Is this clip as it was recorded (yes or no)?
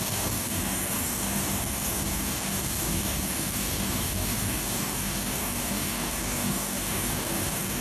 no